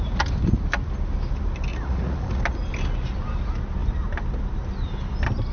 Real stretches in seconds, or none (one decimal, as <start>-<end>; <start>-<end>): 0.0-1.7; 2.4-5.5